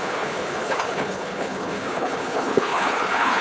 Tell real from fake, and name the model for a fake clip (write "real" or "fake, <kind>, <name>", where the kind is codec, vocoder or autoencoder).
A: fake, codec, HILCodec